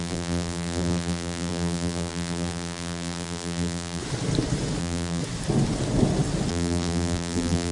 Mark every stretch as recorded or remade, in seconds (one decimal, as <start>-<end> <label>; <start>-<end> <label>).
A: 0.0-4.0 remade; 4.0-4.8 recorded; 4.8-5.2 remade; 5.2-6.5 recorded; 6.5-7.7 remade